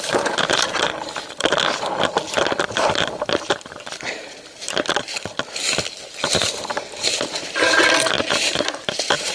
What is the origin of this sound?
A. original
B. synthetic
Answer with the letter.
B